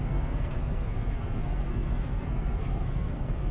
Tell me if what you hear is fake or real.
fake